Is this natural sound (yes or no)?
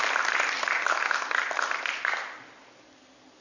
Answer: yes